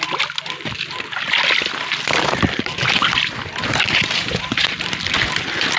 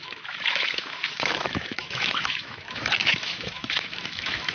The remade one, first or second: second